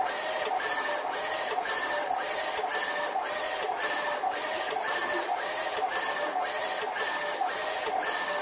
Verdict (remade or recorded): recorded